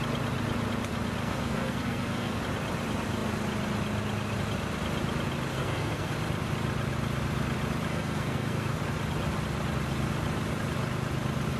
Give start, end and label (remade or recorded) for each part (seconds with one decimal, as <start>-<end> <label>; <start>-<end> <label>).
0.0-1.2 recorded; 1.2-2.4 remade; 2.4-5.5 recorded; 5.5-6.1 remade; 6.1-7.9 recorded; 7.9-8.8 remade; 8.8-11.6 recorded